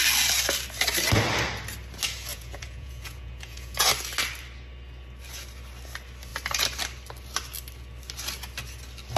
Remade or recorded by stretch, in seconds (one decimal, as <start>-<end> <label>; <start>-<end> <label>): 0.0-2.3 recorded; 2.3-3.9 remade; 3.9-9.2 recorded